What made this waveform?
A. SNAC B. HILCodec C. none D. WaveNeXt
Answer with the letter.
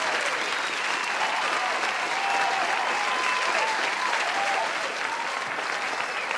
C